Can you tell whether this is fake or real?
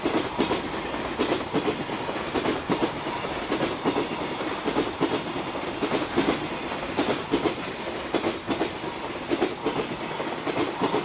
real